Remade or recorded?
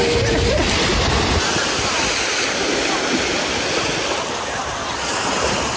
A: recorded